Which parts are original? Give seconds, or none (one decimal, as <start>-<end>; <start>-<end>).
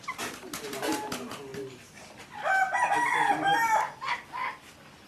0.0-5.1